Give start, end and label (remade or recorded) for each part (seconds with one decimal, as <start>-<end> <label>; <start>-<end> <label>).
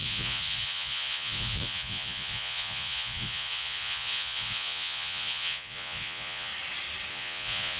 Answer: 0.0-6.5 remade; 6.5-7.1 recorded; 7.1-7.8 remade